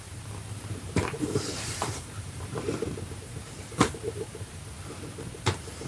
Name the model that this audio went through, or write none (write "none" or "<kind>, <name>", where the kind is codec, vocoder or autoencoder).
vocoder, BigVGAN v2